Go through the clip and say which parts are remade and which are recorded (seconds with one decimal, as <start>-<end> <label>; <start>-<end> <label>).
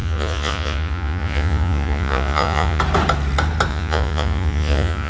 0.0-2.8 remade; 2.8-3.7 recorded; 3.7-5.1 remade